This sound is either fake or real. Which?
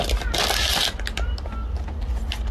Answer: real